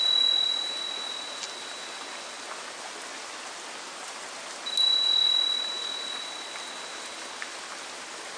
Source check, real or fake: real